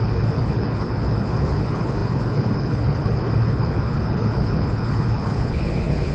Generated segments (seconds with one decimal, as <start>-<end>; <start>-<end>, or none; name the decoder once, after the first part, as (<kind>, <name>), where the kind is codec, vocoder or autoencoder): 0.0-6.1 (codec, HILCodec)

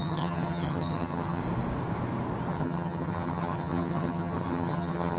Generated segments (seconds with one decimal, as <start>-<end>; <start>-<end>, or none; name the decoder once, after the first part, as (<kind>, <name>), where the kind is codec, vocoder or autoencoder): 0.0-1.4 (vocoder, HiFi-GAN); 2.5-5.2

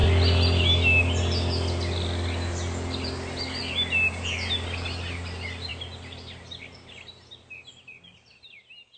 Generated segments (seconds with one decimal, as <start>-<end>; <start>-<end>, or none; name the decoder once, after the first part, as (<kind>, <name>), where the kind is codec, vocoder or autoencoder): none

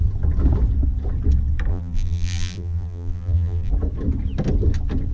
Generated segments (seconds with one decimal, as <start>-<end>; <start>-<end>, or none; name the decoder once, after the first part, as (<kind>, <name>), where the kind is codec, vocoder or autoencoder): 1.7-3.7 (vocoder, BigVGAN v2)

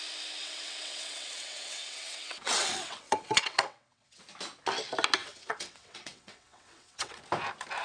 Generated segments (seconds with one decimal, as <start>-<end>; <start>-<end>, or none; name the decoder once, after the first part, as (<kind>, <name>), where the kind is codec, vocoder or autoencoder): 0.4-4.2 (vocoder, WaveNeXt); 5.2-7.2

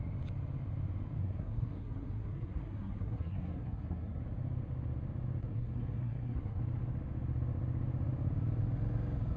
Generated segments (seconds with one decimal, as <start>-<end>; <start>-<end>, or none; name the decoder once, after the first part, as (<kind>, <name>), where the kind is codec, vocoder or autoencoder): 1.2-4.2 (codec, SNAC); 5.4-6.6

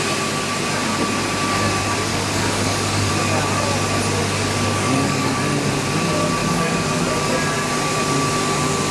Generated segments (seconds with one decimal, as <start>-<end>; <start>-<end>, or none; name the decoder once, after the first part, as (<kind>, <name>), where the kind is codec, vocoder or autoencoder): 2.1-3.1 (codec, DAC); 4.2-5.7; 6.4-7.0